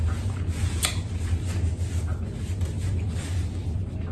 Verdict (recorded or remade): recorded